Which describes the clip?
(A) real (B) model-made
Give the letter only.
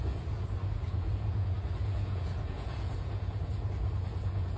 B